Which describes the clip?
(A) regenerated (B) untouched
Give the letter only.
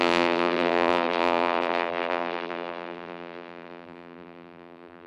A